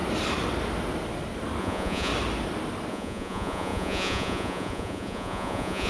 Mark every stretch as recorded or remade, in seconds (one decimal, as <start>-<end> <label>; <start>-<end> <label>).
0.0-1.6 recorded; 1.6-2.1 remade; 2.1-2.9 recorded; 2.9-5.9 remade